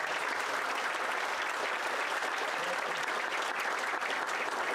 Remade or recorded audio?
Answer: remade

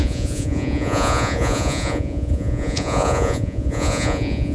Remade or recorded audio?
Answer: remade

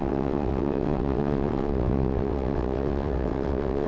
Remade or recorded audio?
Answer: remade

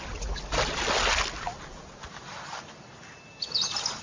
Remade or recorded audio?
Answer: recorded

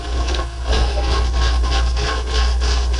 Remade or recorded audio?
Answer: remade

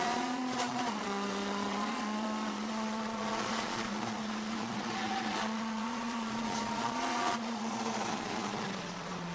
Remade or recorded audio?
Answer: remade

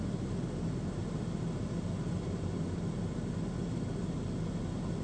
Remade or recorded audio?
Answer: recorded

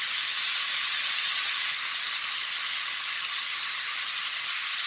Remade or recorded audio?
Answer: recorded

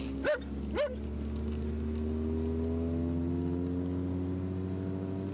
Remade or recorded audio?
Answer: recorded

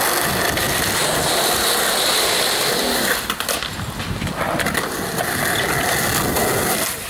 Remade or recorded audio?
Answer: recorded